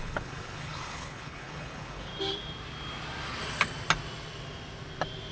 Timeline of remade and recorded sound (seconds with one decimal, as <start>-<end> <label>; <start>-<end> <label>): 0.0-2.1 remade; 2.1-5.3 recorded